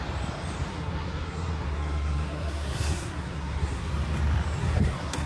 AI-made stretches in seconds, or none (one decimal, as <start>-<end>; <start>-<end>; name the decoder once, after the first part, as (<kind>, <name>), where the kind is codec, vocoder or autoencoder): 0.7-3.9 (codec, SNAC); 4.6-5.3